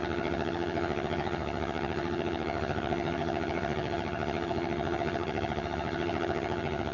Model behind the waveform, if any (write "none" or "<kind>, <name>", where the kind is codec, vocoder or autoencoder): vocoder, HiFi-GAN